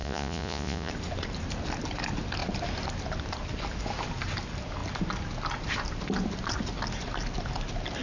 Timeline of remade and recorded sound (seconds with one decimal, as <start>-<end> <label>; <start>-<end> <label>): 0.0-0.9 remade; 0.9-8.0 recorded